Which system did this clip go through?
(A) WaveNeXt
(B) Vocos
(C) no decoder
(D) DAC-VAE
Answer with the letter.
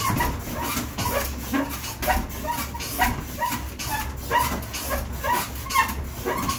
C